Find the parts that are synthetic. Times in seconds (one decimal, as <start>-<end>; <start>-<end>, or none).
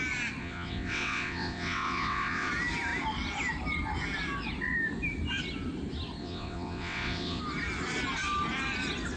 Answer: 0.4-2.5; 6.2-7.4